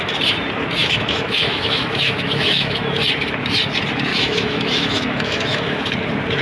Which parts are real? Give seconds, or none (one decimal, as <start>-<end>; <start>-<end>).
0.0-0.8; 3.0-4.1; 5.8-6.4